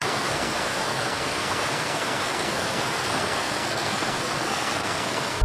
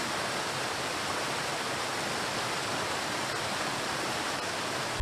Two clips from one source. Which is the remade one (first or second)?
first